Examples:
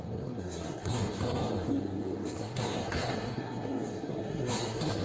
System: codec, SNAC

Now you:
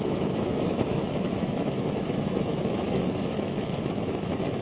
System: autoencoder, DAC-VAE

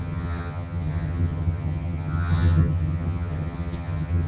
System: vocoder, HiFi-GAN